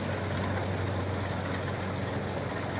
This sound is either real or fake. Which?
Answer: real